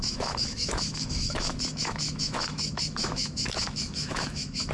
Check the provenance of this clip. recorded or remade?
remade